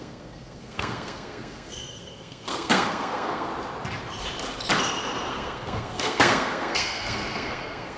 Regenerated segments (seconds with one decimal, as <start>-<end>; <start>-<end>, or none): 0.0-3.5; 5.3-8.0